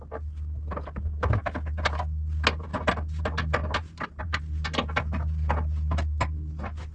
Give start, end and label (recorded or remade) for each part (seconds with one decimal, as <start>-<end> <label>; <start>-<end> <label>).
0.0-3.6 recorded; 3.6-4.4 remade; 4.4-6.9 recorded